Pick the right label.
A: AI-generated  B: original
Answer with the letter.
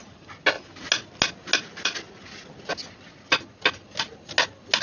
B